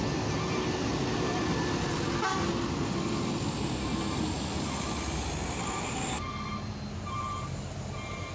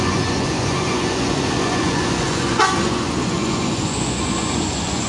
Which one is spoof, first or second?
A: second